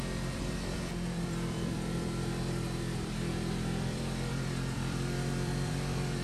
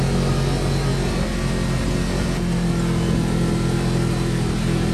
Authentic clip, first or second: second